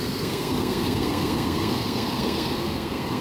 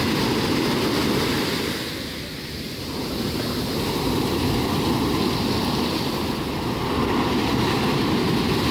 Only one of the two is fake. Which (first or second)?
first